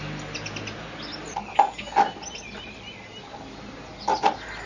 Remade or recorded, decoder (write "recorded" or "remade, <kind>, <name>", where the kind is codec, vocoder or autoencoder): recorded